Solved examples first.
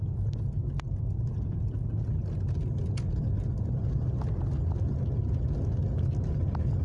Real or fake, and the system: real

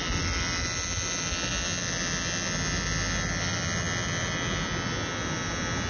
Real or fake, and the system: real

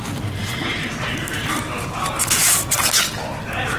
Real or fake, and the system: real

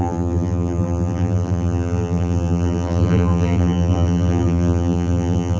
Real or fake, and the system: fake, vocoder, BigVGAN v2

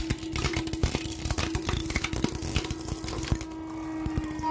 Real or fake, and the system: real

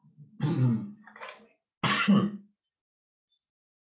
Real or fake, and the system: real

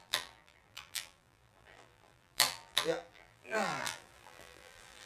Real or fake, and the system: fake, vocoder, BigVGAN v2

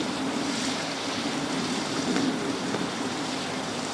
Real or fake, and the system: fake, vocoder, BigVGAN v2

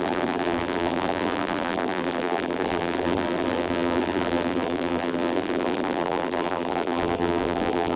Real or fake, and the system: fake, vocoder, BigVGAN v2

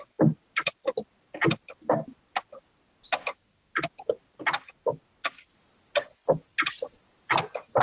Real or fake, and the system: real